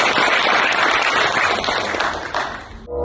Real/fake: real